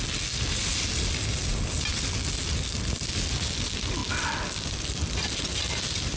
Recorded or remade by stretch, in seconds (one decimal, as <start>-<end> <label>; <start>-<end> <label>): 0.0-6.2 recorded